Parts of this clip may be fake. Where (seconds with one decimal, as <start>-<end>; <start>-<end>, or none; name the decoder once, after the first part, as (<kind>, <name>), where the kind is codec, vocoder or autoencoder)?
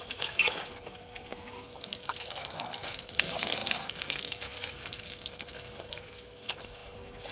0.0-7.3 (codec, SNAC)